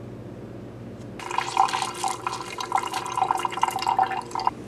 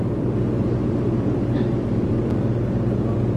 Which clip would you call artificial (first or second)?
second